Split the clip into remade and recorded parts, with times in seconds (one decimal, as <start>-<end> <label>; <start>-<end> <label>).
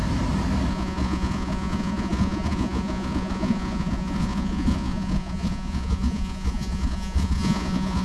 0.0-0.7 recorded; 0.7-8.0 remade